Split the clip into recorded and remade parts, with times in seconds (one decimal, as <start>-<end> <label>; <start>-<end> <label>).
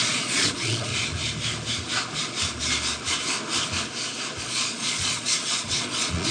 0.0-0.9 remade; 0.9-4.4 recorded; 4.4-6.3 remade